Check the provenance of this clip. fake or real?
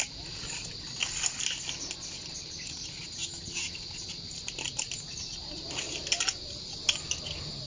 real